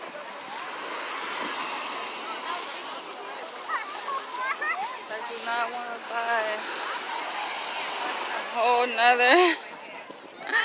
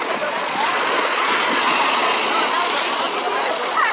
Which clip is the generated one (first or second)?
second